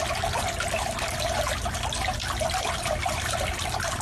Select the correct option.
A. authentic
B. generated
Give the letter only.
A